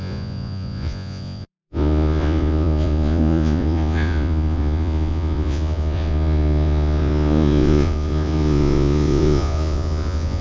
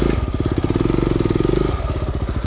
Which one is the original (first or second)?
second